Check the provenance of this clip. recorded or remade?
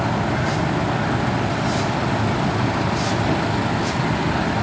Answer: recorded